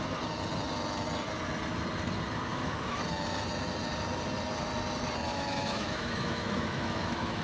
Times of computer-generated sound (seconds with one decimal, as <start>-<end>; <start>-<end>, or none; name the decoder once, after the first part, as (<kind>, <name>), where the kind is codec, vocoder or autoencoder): 2.5-3.0 (autoencoder, DAC-VAE); 5.3-7.4